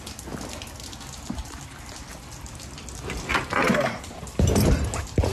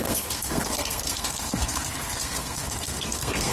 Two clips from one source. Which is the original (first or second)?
first